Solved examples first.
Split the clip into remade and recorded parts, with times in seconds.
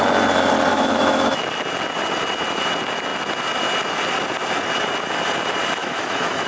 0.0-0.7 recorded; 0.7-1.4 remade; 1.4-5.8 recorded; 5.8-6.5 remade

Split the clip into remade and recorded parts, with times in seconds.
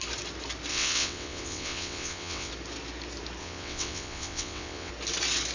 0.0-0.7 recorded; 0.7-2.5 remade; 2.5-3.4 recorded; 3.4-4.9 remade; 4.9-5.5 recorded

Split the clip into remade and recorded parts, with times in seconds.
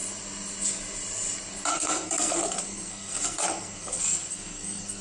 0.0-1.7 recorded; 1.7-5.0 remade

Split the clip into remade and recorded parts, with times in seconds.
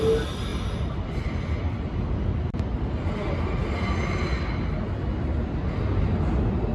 0.0-6.7 recorded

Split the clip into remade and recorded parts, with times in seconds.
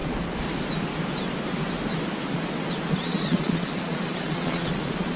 0.0-2.9 recorded; 2.9-5.2 remade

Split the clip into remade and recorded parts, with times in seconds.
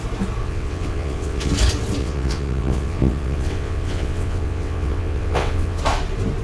0.0-0.4 recorded; 0.4-1.5 remade; 1.5-2.0 recorded; 2.0-5.8 remade; 5.8-6.4 recorded